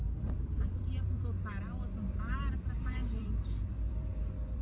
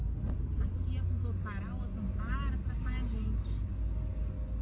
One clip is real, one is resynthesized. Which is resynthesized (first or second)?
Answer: first